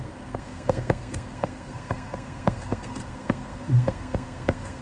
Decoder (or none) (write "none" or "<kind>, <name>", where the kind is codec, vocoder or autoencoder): codec, SNAC